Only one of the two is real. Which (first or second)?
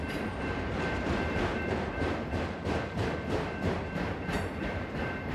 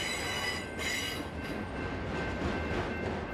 second